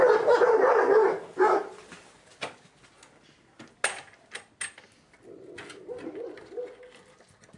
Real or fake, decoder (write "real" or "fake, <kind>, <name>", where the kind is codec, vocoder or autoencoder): real